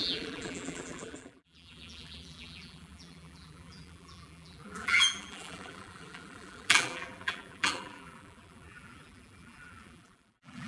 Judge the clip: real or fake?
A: fake